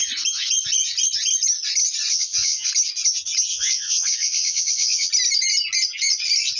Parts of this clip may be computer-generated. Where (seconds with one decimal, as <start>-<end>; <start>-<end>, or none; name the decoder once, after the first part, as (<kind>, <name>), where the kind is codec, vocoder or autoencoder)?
2.1-2.7 (vocoder, WaveNeXt); 3.5-5.1

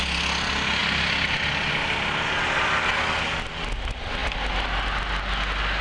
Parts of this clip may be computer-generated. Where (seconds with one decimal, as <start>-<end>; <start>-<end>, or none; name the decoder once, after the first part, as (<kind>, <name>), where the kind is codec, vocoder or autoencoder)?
none

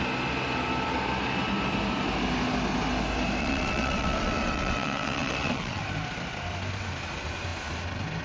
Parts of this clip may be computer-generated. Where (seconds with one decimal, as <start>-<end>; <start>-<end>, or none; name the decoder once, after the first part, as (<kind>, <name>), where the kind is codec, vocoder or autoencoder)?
3.4-5.8 (vocoder, WaveNeXt)

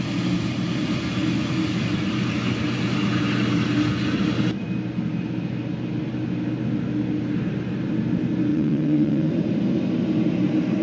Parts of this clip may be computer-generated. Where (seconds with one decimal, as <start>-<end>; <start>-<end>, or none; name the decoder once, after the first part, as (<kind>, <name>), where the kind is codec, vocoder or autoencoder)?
8.5-9.3 (vocoder, WaveNeXt)

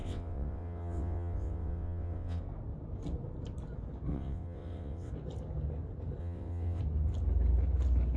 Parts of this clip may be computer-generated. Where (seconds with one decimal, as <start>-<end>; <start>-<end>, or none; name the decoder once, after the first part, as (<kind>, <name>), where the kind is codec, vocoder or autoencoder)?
0.0-2.4 (vocoder, WaveNeXt); 4.1-5.1; 6.2-6.8

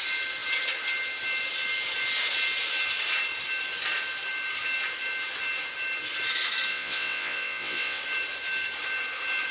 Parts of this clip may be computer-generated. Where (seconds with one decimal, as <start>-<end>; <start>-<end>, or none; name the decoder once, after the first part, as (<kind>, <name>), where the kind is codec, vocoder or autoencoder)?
6.7-8.0 (vocoder, WaveNeXt)

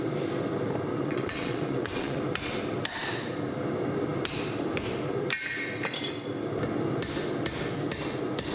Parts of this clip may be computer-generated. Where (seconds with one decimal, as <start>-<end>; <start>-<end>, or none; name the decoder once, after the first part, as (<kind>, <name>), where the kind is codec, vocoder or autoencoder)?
0.9-2.2 (vocoder, WaveNeXt)